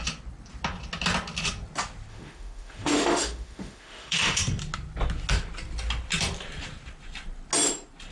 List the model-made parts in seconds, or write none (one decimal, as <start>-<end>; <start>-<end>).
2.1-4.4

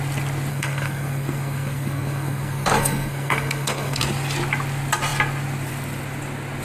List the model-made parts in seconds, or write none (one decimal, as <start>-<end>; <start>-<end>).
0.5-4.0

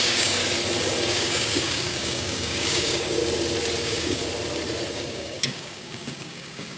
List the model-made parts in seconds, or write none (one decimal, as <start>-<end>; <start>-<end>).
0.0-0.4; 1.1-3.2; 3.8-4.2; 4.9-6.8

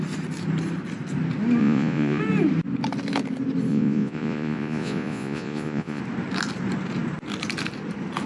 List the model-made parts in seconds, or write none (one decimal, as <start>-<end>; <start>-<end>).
1.6-2.2; 3.7-6.0

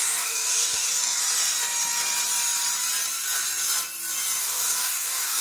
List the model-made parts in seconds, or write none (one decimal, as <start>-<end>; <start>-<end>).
0.0-1.2; 4.4-5.4